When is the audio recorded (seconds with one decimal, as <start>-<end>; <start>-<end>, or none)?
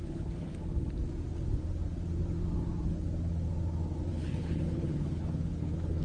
0.5-4.1